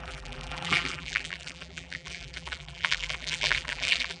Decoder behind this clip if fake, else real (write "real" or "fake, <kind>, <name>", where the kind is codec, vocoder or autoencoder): fake, vocoder, BigVGAN v2